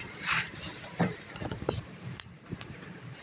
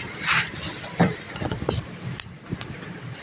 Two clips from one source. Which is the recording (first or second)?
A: second